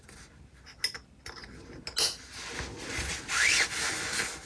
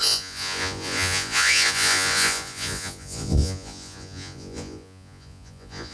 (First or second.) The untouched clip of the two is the first